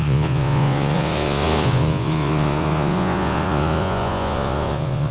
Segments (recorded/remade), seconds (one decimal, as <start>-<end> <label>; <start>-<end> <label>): 0.0-5.1 remade